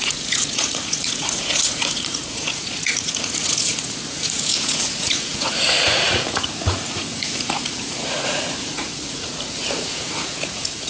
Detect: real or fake fake